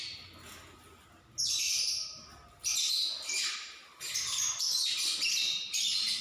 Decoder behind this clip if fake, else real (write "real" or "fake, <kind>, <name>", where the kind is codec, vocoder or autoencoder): real